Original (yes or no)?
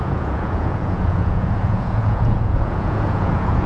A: no